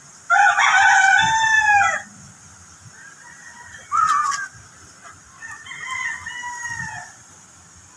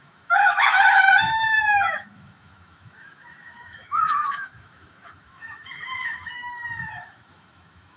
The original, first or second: first